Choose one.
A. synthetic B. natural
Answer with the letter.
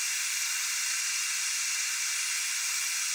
B